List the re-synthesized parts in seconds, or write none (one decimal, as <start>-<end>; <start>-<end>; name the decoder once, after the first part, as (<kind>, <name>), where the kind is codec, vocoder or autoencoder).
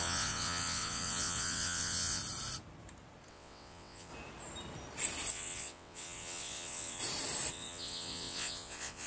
0.0-2.2 (vocoder, WaveNeXt); 3.3-4.1; 5.3-7.0; 7.5-9.1